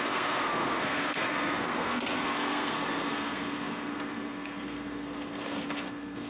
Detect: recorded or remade remade